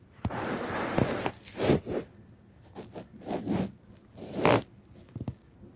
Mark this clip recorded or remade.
recorded